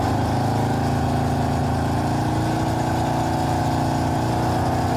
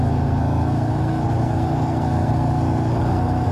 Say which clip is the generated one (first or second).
second